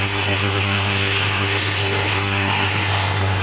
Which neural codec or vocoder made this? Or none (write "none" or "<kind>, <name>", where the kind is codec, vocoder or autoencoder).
codec, SNAC